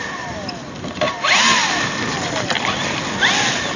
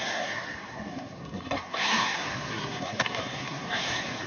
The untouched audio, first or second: first